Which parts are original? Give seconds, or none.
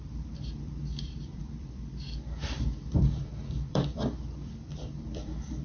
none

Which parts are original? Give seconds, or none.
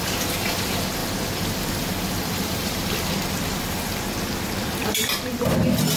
0.0-1.0; 3.1-4.8; 5.5-6.0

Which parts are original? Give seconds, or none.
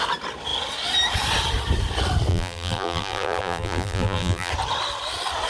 0.0-2.3; 4.5-5.5